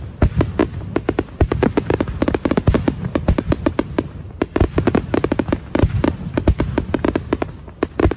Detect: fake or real real